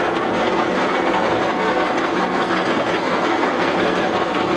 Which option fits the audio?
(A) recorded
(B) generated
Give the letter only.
B